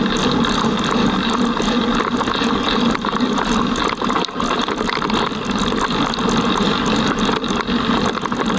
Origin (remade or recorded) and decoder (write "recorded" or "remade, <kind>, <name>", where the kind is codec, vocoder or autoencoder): recorded